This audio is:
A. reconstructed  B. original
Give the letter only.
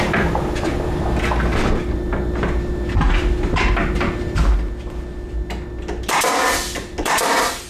B